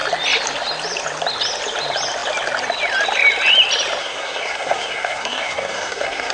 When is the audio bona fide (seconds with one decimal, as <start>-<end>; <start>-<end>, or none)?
0.0-4.0